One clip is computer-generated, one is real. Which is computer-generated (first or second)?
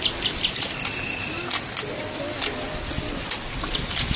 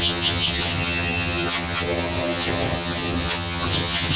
second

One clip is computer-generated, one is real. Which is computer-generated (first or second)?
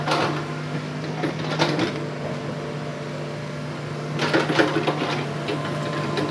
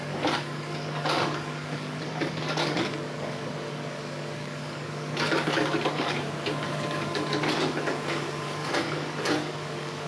second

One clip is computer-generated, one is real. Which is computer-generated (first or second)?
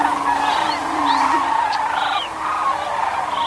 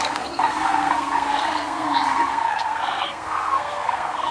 second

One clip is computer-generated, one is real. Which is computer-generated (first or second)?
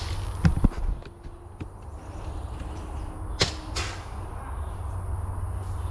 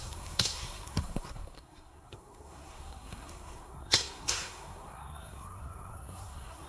second